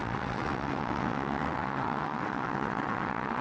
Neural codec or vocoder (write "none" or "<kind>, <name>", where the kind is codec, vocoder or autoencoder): vocoder, WaveNeXt